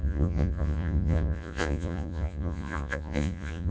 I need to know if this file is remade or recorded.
remade